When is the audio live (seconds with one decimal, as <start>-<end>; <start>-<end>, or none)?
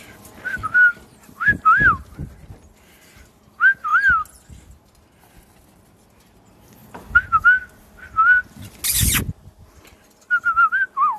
0.0-11.2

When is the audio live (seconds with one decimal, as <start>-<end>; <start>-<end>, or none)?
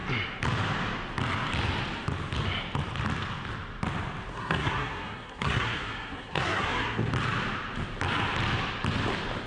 0.0-4.3; 7.1-9.5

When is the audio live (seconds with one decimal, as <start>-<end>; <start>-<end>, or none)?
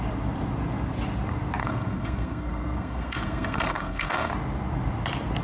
0.0-1.6; 4.3-5.4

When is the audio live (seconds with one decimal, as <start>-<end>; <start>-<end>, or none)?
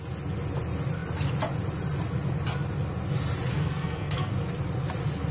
0.0-3.5; 4.3-5.3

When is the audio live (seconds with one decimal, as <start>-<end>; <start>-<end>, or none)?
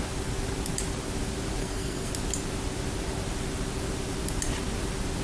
0.0-1.6; 2.1-5.2